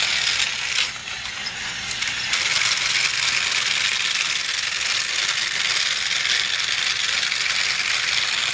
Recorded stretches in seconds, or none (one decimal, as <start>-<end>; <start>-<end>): 0.0-8.5